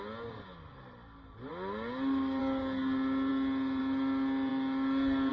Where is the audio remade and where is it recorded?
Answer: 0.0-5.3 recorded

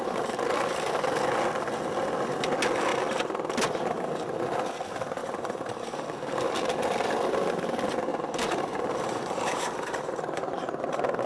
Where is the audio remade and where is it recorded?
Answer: 0.0-5.2 recorded; 5.2-6.0 remade; 6.0-8.1 recorded; 8.1-10.8 remade; 10.8-11.3 recorded

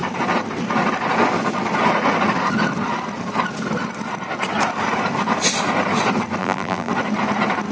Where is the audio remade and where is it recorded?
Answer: 0.0-6.4 recorded; 6.4-6.9 remade; 6.9-7.7 recorded

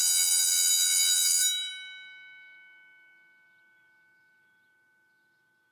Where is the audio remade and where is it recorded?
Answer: 0.0-1.7 remade; 1.7-5.7 recorded

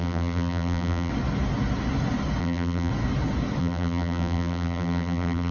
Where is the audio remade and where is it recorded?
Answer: 0.0-1.1 remade; 1.1-2.4 recorded; 2.4-2.9 remade; 2.9-3.6 recorded; 3.6-5.5 remade

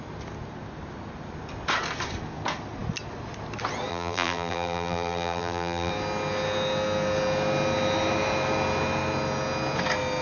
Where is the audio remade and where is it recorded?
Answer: 0.0-3.9 recorded; 3.9-5.9 remade; 5.9-10.2 recorded

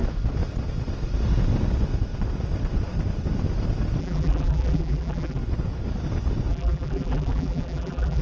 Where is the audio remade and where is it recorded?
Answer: 0.0-4.0 recorded; 4.0-5.4 remade; 5.4-6.5 recorded; 6.5-8.2 remade

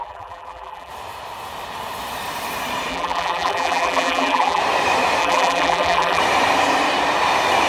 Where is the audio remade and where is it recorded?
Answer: 0.0-0.9 remade; 0.9-2.9 recorded; 2.9-4.6 remade; 4.6-5.2 recorded; 5.2-6.2 remade; 6.2-7.7 recorded